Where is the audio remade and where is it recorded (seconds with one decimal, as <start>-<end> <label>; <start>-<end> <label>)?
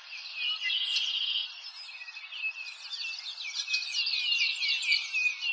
0.0-5.5 recorded